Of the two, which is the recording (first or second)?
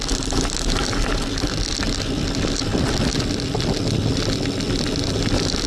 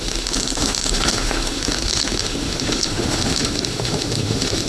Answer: first